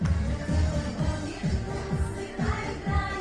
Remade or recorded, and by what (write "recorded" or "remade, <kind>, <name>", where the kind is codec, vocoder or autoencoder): recorded